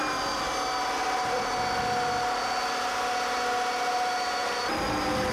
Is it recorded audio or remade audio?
recorded